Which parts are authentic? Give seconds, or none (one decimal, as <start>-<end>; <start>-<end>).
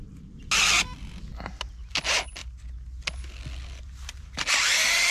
0.0-5.1